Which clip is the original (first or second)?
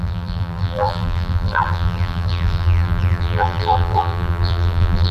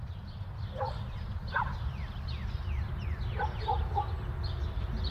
second